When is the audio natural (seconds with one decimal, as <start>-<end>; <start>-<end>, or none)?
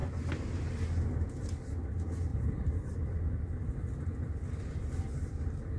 0.0-2.3